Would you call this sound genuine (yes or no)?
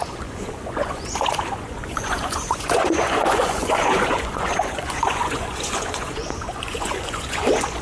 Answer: no